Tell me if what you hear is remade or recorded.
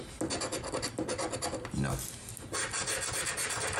recorded